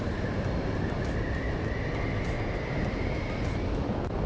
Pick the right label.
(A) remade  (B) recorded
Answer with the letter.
B